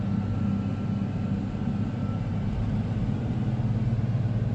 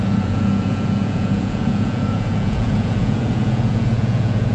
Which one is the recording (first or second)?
first